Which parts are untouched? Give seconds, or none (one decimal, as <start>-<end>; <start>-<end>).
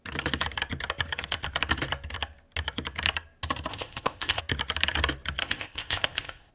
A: 0.0-3.7; 4.4-5.4